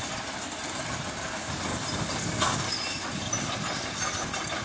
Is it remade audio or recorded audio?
recorded